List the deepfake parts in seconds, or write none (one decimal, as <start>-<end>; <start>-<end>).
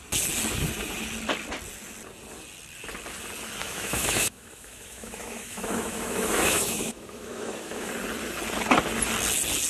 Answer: 3.6-7.9